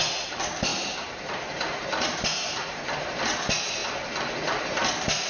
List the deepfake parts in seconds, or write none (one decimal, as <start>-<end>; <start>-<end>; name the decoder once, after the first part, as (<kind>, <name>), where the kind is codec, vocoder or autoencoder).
0.7-3.2 (vocoder, BigVGAN v2)